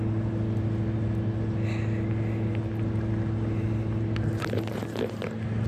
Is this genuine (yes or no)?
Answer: yes